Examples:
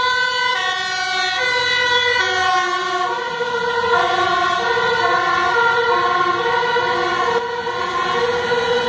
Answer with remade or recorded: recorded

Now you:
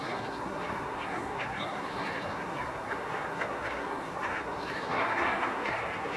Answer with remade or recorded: remade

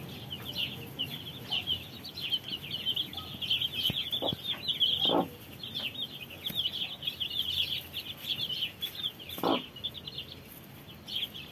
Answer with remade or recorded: recorded